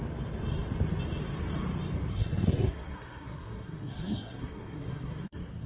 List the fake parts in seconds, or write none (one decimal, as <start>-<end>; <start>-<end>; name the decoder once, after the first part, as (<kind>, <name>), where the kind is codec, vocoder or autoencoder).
2.1-5.7 (codec, SNAC)